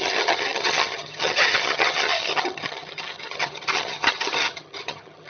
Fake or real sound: fake